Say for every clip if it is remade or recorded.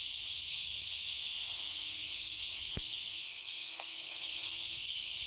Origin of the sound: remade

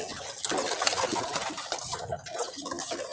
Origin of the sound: recorded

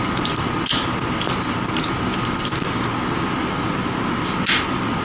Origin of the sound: recorded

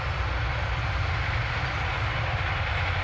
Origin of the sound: recorded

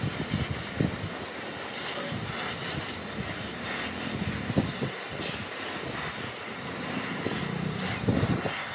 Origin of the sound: recorded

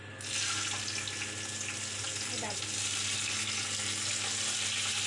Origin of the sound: recorded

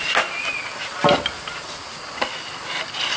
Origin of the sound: recorded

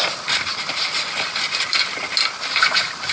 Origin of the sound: remade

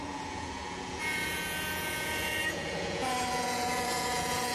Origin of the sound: remade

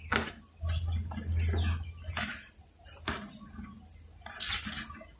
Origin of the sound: recorded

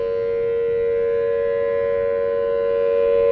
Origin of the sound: recorded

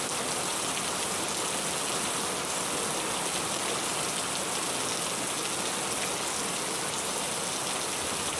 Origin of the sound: recorded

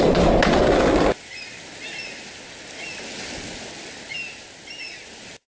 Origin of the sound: recorded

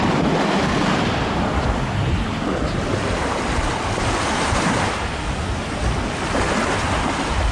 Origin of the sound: recorded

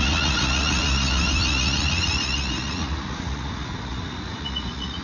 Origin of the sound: remade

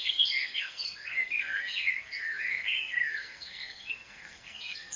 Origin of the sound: remade